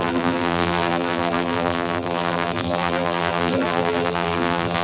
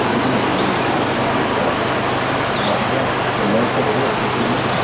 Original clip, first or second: second